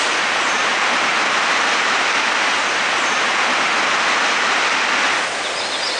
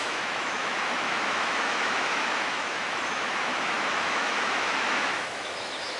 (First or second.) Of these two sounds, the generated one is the second